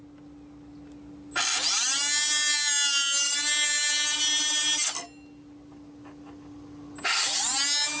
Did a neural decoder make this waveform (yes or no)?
no